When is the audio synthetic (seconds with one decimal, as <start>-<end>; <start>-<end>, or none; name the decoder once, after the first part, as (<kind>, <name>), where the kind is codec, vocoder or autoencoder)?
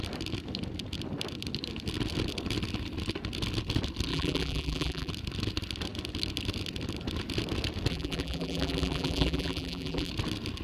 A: 4.1-5.1 (vocoder, BigVGAN v2); 7.9-10.1